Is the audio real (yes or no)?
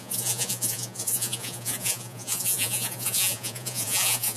no